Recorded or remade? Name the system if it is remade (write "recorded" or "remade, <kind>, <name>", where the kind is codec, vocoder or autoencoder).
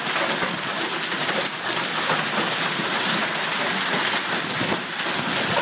recorded